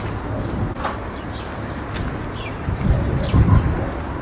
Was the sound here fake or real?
real